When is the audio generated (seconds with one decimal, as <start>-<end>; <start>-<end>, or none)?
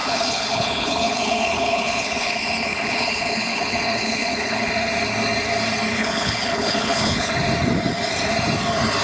0.0-4.7; 5.9-7.3